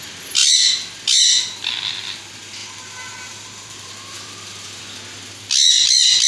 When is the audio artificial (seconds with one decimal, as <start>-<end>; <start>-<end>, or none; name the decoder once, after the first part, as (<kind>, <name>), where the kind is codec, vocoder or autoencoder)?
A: 2.6-4.8 (vocoder, BigVGAN v2)